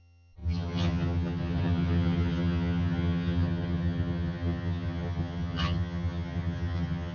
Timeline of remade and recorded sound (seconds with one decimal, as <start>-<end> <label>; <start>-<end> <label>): 0.0-7.1 remade